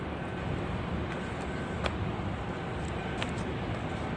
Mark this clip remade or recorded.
recorded